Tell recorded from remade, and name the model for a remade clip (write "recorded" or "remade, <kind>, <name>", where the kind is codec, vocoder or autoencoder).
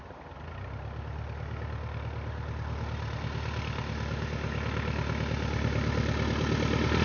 recorded